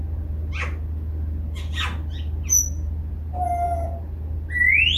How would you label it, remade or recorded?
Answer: recorded